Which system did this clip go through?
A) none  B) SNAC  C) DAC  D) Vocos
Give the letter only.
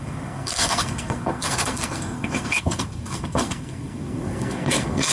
B